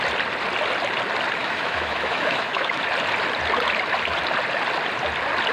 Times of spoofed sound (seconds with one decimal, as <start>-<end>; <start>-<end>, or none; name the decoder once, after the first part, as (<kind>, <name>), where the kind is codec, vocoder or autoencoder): 1.4-2.7 (autoencoder, DAC-VAE)